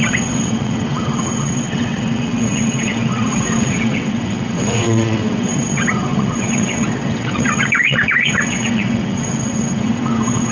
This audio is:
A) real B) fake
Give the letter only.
B